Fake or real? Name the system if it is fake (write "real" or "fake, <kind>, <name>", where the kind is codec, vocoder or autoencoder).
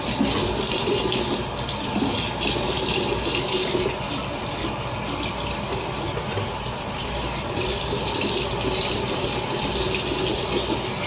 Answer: real